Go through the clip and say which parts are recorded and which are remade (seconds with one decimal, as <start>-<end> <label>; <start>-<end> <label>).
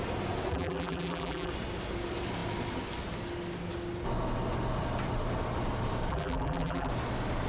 0.0-0.5 recorded; 0.5-1.5 remade; 1.5-6.1 recorded; 6.1-6.9 remade; 6.9-7.5 recorded